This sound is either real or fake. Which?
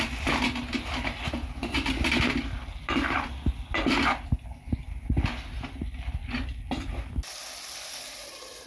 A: real